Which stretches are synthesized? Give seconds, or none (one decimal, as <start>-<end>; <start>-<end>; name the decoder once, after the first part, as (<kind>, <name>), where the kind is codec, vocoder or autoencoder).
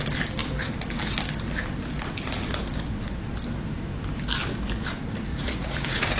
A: 5.3-6.2 (vocoder, Vocos)